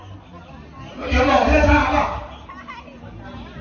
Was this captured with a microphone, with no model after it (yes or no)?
yes